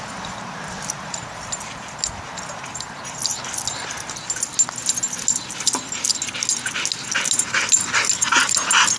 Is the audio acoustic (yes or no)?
yes